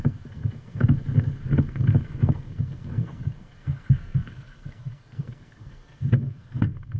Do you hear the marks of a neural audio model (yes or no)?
yes